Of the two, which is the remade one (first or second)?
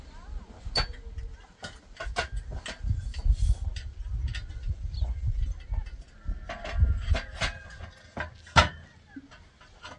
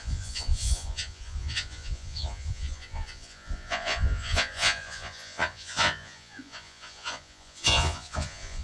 second